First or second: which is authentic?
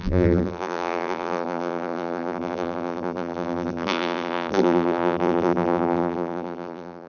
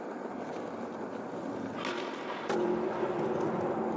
second